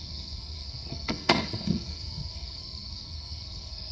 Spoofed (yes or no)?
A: yes